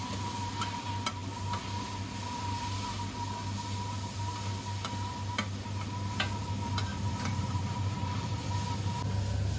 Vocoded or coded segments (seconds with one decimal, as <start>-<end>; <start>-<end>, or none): 6.9-8.4